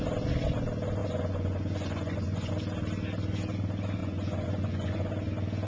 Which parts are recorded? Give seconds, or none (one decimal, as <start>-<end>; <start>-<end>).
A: 0.0-1.0; 2.5-4.0; 5.1-5.7